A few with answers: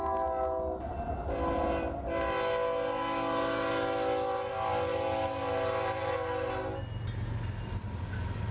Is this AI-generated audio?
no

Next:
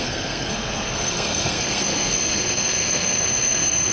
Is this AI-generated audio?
yes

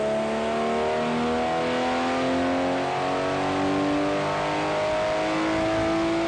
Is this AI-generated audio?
no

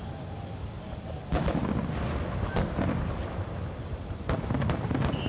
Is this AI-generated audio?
no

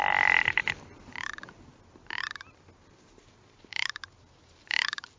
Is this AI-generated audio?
no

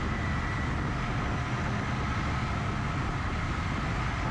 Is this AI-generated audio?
no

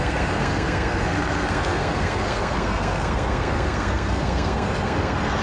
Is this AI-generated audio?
yes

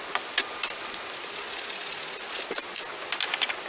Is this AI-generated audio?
no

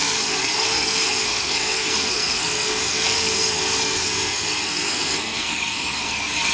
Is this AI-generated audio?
yes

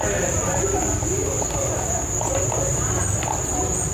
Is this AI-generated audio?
no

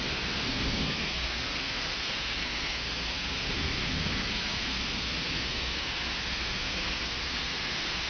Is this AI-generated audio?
yes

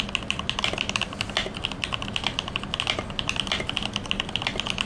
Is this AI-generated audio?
no